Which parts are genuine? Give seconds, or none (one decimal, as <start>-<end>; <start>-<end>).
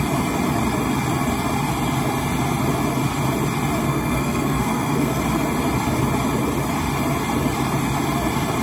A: 0.0-3.8; 5.2-8.6